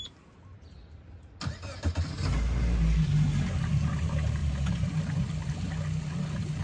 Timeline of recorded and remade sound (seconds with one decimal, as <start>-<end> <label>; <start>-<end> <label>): 0.0-6.6 recorded